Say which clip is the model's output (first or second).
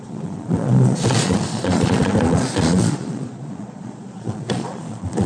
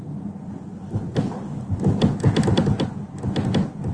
first